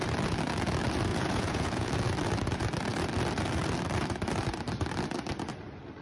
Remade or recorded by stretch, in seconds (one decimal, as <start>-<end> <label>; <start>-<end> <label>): 0.0-1.1 recorded; 1.1-1.9 remade; 1.9-6.0 recorded

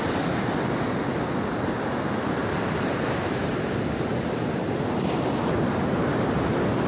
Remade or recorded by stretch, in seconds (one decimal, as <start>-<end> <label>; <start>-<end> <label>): 0.0-2.4 recorded; 2.4-6.5 remade; 6.5-6.9 recorded

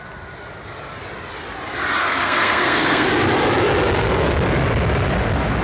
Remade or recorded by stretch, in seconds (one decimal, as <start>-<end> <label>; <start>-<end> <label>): 0.0-2.0 recorded; 2.0-3.1 remade; 3.1-5.6 recorded